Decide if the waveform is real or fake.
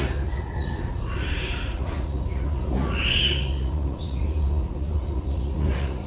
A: fake